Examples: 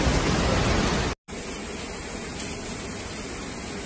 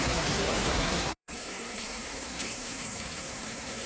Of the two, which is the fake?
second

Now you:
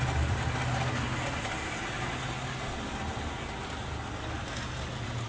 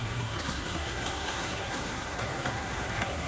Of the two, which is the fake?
second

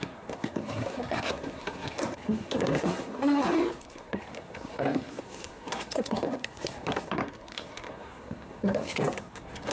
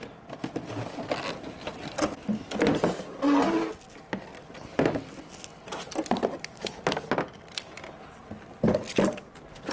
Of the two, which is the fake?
first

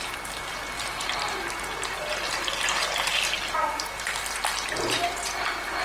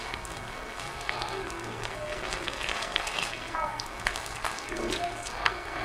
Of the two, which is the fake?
second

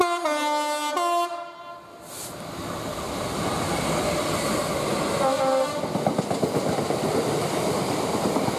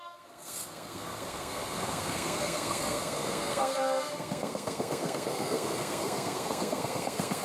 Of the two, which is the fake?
second